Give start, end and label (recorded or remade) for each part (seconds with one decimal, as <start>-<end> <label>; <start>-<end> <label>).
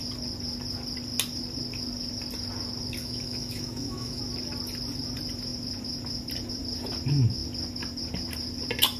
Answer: 0.0-3.0 recorded; 3.0-4.2 remade; 4.2-9.0 recorded